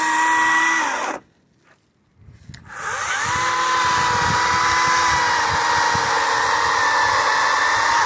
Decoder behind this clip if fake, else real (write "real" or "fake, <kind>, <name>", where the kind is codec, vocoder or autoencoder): real